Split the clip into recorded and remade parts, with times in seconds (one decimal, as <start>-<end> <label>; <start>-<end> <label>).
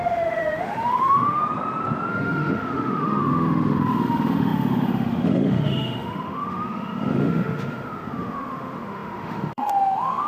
0.0-1.4 remade; 1.4-2.1 recorded; 2.1-10.3 remade